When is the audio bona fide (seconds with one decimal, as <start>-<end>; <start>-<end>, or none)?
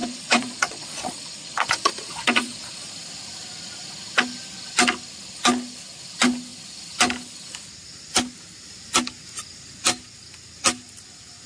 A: 2.9-11.5